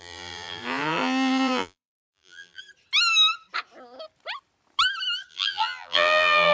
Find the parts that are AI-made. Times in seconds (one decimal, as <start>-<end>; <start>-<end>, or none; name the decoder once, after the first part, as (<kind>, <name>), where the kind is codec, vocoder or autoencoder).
0.0-2.6 (vocoder, BigVGAN v2); 5.3-6.5